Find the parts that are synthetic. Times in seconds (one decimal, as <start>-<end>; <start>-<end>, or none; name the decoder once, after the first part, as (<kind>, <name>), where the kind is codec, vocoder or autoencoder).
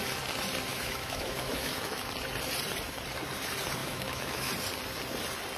0.7-2.1 (autoencoder, DAC-VAE); 3.8-4.5